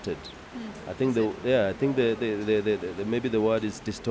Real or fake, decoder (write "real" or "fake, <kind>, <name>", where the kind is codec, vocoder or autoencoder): real